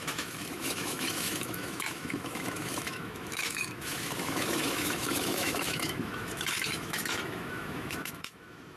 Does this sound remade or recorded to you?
remade